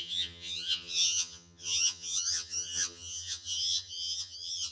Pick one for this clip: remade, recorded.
remade